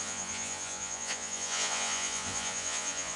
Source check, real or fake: fake